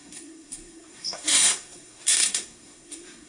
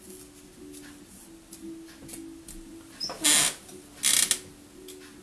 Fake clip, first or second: first